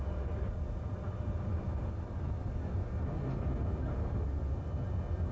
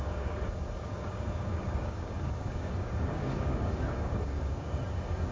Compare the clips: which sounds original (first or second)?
first